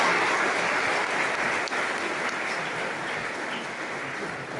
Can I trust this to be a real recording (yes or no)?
yes